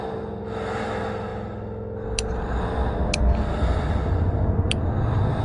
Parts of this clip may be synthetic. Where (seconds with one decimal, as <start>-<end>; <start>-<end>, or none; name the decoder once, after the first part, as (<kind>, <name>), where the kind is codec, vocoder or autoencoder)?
none